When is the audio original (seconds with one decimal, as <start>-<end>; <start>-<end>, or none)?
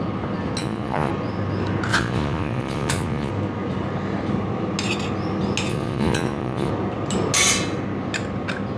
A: 0.0-0.6; 1.1-1.9; 3.3-5.7; 6.7-8.8